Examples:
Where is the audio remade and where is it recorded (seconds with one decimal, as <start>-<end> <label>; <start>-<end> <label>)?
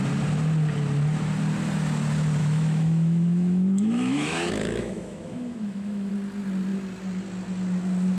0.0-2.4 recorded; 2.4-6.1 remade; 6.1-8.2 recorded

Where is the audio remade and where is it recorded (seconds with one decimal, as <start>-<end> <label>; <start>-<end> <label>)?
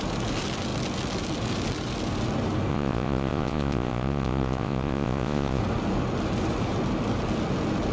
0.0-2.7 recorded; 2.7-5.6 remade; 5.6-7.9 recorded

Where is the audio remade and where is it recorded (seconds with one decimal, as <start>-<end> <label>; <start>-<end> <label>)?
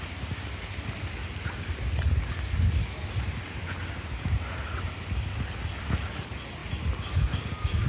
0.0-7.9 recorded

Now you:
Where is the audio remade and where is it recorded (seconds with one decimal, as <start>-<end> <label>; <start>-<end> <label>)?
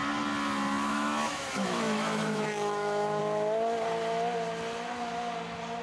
0.0-0.9 recorded; 0.9-3.2 remade; 3.2-5.8 recorded